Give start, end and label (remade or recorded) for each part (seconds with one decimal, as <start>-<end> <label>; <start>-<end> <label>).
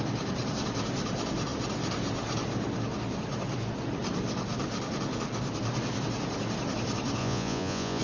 0.0-7.2 recorded; 7.2-8.0 remade